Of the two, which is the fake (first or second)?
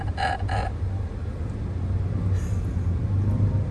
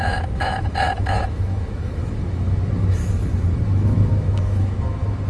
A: second